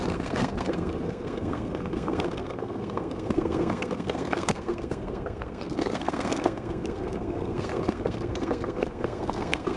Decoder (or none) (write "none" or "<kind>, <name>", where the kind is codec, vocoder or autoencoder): codec, SNAC